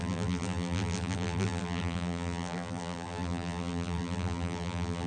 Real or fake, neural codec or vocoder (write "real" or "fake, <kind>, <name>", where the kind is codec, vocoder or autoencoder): fake, vocoder, BigVGAN v2